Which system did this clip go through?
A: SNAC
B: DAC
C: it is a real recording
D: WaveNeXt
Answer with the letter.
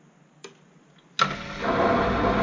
C